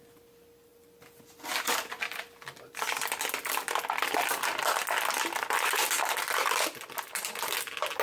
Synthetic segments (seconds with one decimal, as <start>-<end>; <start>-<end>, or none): none